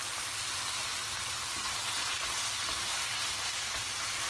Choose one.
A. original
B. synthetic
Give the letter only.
A